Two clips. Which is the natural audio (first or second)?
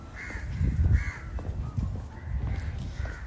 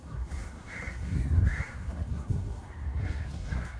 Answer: first